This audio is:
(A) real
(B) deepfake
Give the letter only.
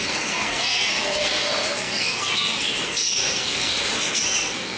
B